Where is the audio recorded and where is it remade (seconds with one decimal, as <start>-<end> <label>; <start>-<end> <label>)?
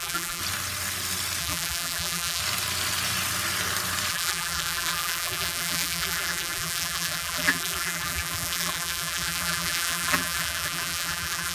0.0-0.4 remade; 0.4-1.4 recorded; 1.4-2.4 remade; 2.4-4.1 recorded; 4.1-11.5 remade